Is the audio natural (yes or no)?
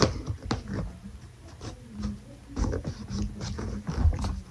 yes